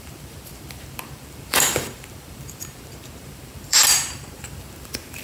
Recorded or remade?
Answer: remade